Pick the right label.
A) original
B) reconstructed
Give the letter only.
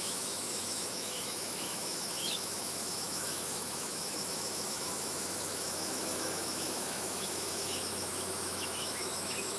B